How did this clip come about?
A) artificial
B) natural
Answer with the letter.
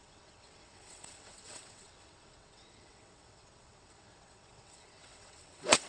A